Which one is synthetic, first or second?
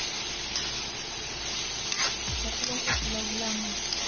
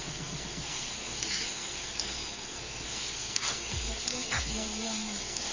second